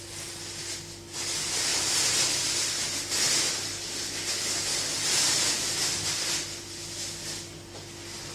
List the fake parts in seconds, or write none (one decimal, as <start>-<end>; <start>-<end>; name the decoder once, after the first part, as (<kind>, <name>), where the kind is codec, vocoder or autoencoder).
none